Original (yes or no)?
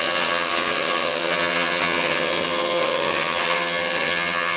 no